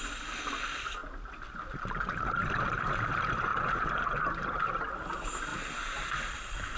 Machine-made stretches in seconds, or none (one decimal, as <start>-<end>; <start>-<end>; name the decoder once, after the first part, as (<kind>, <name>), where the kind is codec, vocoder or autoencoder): 3.5-4.7 (vocoder, BigVGAN v2); 5.5-6.8